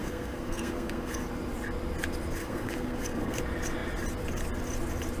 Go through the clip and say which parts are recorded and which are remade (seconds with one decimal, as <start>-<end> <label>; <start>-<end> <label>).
0.0-1.2 remade; 1.2-2.4 recorded; 2.4-3.4 remade; 3.4-5.2 recorded